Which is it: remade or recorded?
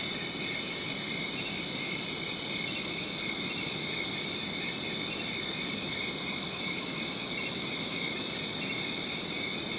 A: recorded